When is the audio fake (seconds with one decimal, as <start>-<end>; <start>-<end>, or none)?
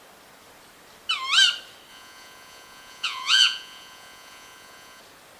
1.9-5.0